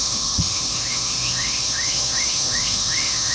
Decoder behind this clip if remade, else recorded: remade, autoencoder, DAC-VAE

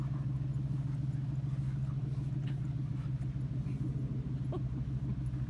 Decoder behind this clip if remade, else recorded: recorded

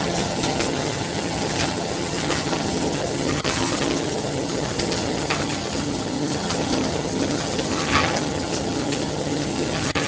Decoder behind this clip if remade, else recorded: remade, vocoder, HiFi-GAN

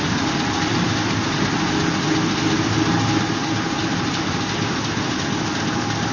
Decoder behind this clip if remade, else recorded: recorded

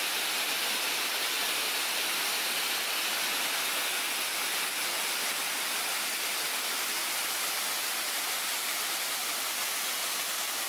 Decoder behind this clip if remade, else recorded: recorded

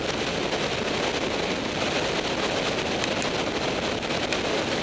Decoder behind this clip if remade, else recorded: recorded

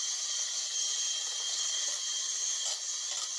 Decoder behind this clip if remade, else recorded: recorded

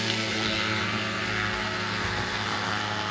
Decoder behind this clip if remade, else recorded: remade, codec, SNAC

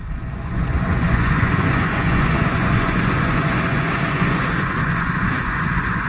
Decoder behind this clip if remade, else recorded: remade, vocoder, Vocos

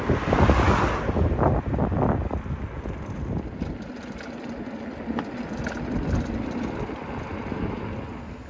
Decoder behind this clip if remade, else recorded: recorded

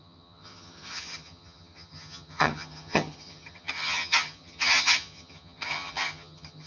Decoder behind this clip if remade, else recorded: remade, vocoder, HiFi-GAN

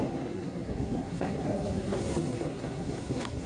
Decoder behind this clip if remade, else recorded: remade, codec, SNAC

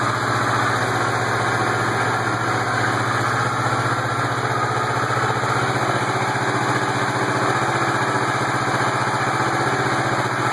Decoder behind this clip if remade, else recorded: recorded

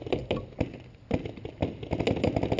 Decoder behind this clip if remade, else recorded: recorded